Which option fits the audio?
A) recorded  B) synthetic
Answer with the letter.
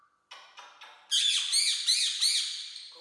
A